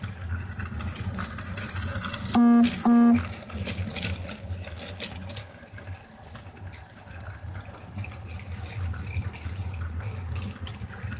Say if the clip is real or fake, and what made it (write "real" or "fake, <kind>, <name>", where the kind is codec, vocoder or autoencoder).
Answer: real